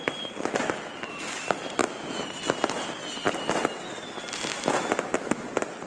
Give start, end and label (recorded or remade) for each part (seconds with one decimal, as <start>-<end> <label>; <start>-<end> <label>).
0.0-5.9 recorded